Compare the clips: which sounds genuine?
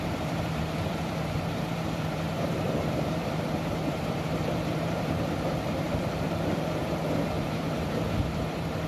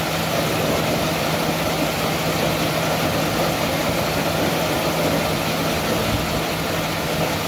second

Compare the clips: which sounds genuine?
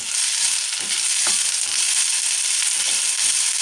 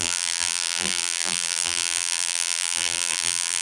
first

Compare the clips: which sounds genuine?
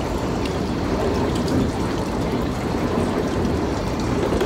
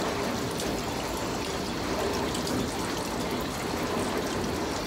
second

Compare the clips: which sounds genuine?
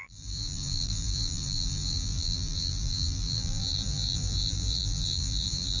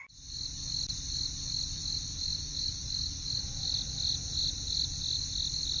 second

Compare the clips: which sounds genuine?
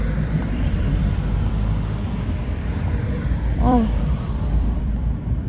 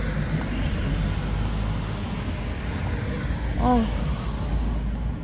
second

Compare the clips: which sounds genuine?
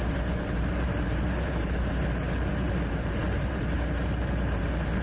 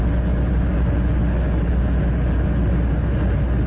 second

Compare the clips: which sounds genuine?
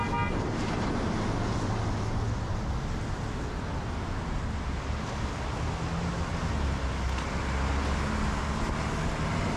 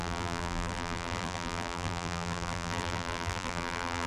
first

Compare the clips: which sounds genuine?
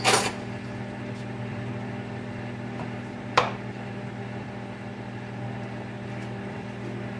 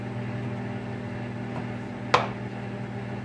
second